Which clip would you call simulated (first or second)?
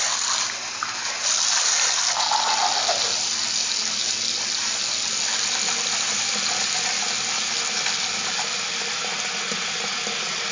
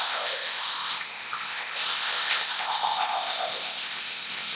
second